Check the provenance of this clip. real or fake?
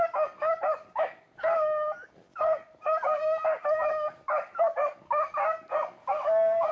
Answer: fake